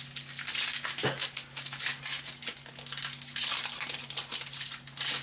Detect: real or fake real